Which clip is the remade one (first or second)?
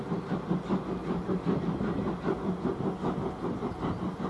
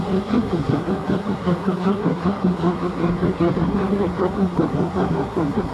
second